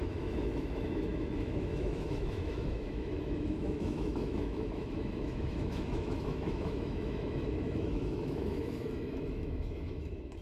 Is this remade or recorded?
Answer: remade